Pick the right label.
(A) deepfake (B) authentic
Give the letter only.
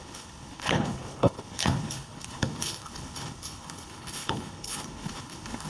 A